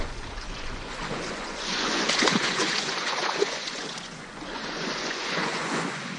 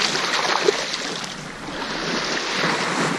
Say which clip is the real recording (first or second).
second